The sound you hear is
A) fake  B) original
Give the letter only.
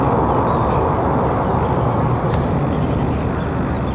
B